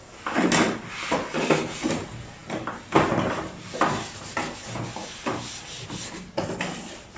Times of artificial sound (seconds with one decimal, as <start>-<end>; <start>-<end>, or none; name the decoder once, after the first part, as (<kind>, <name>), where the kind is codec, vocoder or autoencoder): none